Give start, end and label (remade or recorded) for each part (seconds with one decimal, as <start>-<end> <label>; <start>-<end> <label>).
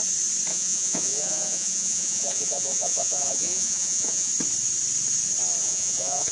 0.0-0.5 recorded; 0.5-4.3 remade; 4.3-5.6 recorded; 5.6-6.3 remade